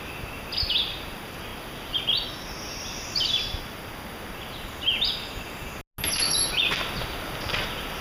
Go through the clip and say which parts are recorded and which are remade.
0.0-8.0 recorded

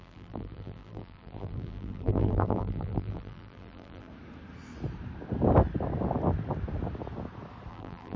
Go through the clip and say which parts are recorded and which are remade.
0.0-4.1 remade; 4.1-7.7 recorded; 7.7-8.2 remade

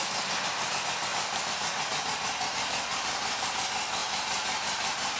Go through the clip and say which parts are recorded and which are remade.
0.0-1.1 recorded; 1.1-2.0 remade; 2.0-2.9 recorded; 2.9-3.5 remade; 3.5-4.0 recorded; 4.0-5.2 remade

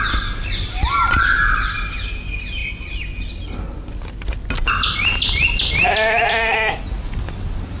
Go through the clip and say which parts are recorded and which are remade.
0.0-7.8 recorded

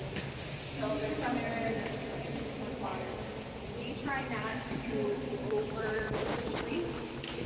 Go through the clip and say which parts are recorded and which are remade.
0.0-2.9 recorded; 2.9-6.4 remade; 6.4-7.5 recorded

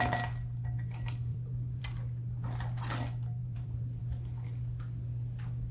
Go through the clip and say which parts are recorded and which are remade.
0.0-1.3 recorded; 1.3-1.8 remade; 1.8-3.4 recorded; 3.4-4.0 remade; 4.0-5.7 recorded

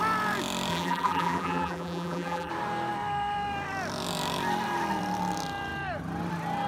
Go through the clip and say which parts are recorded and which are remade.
0.0-0.7 recorded; 0.7-2.5 remade; 2.5-6.7 recorded

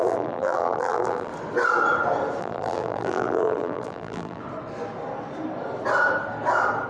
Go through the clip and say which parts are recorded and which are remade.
0.0-1.3 remade; 1.3-2.4 recorded; 2.4-4.4 remade; 4.4-6.9 recorded